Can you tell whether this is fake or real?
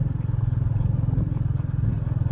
real